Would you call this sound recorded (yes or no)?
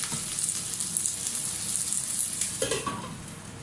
yes